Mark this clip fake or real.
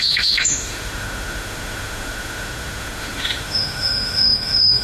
fake